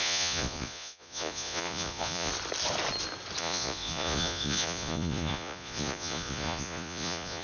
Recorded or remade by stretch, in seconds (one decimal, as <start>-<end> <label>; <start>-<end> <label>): 0.0-2.3 remade; 2.3-3.4 recorded; 3.4-7.4 remade